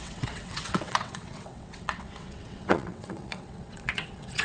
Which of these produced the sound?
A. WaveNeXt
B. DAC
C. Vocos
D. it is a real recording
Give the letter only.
A